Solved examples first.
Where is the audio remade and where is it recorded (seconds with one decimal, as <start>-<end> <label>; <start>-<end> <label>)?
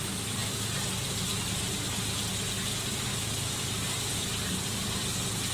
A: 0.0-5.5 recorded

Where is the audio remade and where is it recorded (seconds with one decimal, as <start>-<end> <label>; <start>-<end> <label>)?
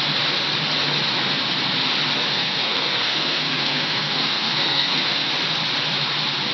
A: 0.0-2.3 recorded; 2.3-5.3 remade; 5.3-6.5 recorded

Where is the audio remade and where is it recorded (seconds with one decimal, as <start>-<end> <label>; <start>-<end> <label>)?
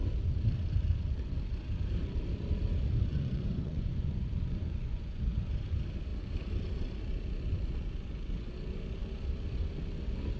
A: 0.0-3.1 recorded; 3.1-5.4 remade; 5.4-10.4 recorded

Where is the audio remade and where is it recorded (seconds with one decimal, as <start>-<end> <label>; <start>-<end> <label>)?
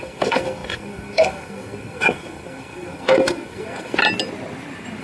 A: 0.0-4.0 remade; 4.0-5.0 recorded